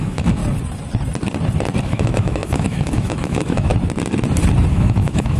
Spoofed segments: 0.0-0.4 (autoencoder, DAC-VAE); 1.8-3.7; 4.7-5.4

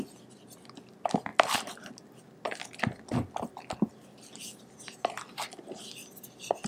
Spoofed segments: none

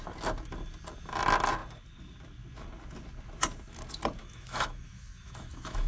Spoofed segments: 4.2-5.9 (autoencoder, DAC-VAE)

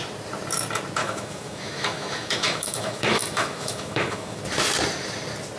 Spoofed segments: 1.0-4.4 (autoencoder, DAC-VAE)